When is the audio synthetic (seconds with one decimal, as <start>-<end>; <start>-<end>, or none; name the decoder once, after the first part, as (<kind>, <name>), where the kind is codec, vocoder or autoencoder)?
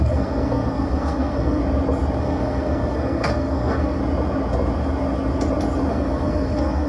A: 0.0-1.6 (codec, SNAC); 2.2-4.0; 5.9-6.9